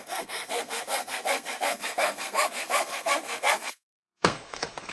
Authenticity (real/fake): fake